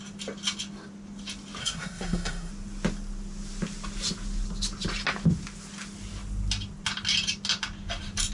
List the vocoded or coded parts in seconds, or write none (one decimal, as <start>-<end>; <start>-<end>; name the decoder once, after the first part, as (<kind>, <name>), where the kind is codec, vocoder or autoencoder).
1.6-2.5 (codec, SNAC)